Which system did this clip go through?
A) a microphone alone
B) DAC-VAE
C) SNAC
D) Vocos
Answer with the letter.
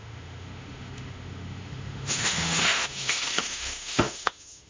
B